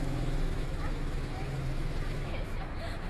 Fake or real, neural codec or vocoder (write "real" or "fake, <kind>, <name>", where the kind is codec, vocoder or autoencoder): fake, autoencoder, DAC-VAE